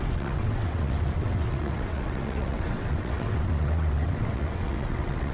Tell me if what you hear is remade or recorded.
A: remade